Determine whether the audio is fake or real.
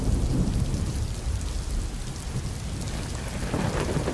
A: real